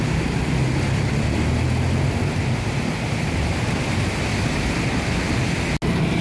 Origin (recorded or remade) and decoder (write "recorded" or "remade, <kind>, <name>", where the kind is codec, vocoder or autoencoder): recorded